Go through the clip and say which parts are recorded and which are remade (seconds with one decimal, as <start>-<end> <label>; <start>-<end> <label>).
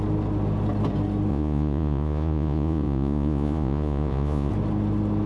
0.0-1.3 recorded; 1.3-4.5 remade; 4.5-5.3 recorded